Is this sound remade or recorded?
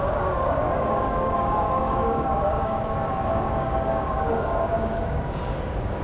remade